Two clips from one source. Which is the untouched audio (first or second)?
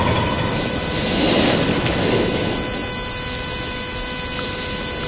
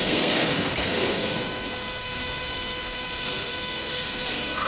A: first